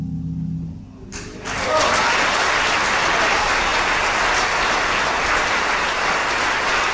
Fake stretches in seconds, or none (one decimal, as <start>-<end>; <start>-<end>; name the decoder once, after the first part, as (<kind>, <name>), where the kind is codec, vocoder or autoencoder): none